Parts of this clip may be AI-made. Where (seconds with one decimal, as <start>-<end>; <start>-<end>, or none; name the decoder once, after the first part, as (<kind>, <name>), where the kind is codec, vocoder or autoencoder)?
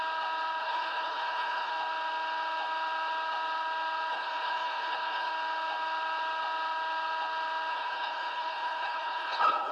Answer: 0.6-1.7 (codec, HILCodec); 4.1-5.3; 7.7-9.7